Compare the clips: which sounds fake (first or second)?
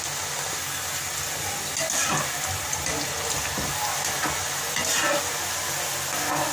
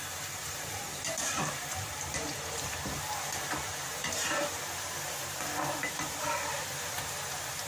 second